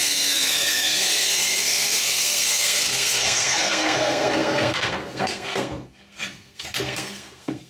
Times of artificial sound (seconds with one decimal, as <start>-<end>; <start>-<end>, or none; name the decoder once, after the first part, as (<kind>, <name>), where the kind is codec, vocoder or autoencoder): 0.0-7.7 (codec, SNAC)